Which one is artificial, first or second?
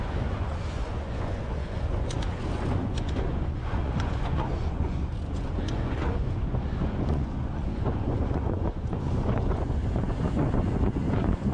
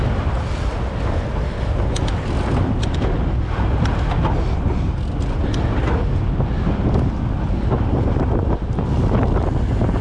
first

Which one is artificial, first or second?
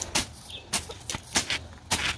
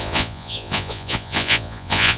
second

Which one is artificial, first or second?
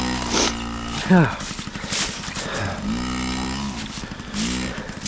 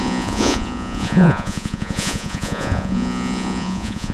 second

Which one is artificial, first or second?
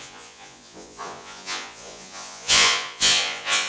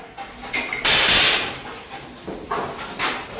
first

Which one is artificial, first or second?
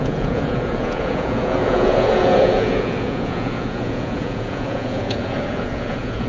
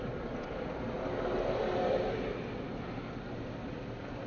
first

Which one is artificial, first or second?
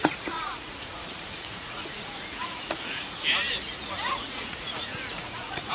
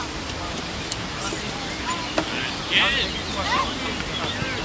first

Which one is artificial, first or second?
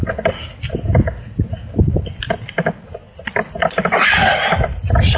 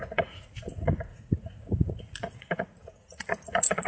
second